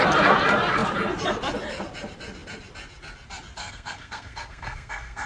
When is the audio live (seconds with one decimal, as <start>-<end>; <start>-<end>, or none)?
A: 0.0-3.6